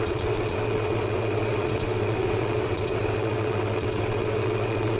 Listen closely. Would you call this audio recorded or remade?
remade